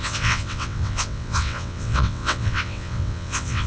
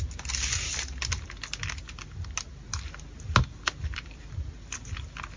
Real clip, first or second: second